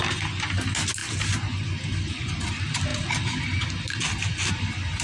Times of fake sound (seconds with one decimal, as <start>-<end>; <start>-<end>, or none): none